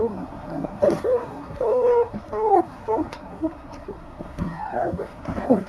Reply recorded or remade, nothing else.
remade